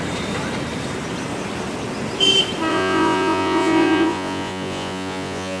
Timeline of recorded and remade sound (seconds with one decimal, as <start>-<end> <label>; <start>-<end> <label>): 0.0-2.7 recorded; 2.7-5.6 remade